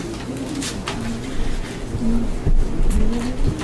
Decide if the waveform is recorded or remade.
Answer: recorded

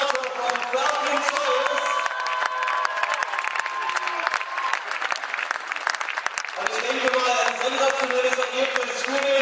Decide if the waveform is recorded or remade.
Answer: recorded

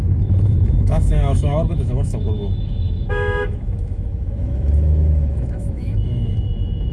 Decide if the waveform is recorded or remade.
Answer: remade